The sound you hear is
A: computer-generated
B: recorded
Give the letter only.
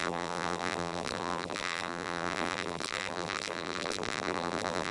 A